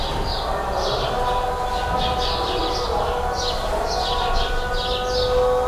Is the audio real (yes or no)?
yes